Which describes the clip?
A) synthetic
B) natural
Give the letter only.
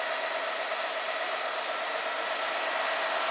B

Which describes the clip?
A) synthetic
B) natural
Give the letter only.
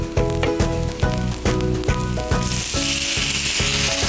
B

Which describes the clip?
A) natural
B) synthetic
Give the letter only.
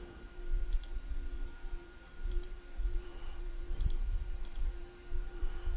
B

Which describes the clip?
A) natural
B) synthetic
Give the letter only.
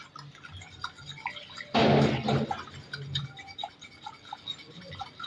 A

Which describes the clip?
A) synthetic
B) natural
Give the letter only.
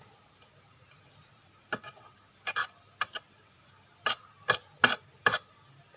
B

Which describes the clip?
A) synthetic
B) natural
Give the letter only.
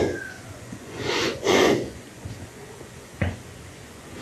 A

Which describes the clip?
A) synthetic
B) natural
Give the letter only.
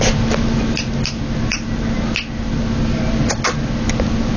B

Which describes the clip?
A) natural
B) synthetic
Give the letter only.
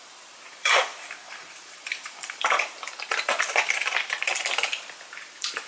B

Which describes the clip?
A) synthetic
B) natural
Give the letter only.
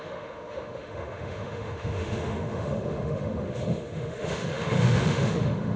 A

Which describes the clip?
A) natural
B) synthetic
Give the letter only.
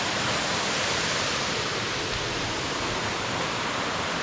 A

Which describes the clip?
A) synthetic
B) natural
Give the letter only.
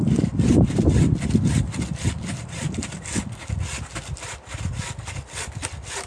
B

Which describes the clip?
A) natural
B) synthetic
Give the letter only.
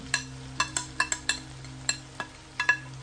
A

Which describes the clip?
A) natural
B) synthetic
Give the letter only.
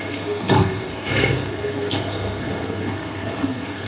B